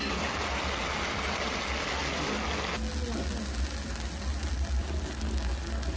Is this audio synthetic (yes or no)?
no